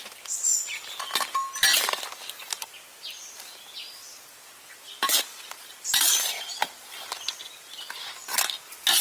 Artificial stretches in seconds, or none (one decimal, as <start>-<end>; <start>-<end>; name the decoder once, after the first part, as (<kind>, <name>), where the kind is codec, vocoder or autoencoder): 2.4-7.6 (vocoder, BigVGAN v2)